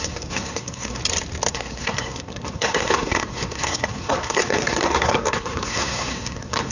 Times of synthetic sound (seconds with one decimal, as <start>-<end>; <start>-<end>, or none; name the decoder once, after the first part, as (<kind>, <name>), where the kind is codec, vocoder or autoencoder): 0.0-1.0 (codec, SNAC); 1.5-6.7